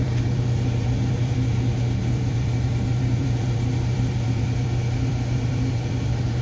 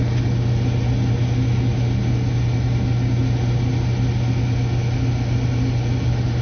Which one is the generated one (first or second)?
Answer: first